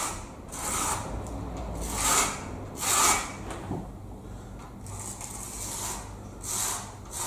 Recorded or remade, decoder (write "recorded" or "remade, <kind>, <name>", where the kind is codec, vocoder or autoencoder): recorded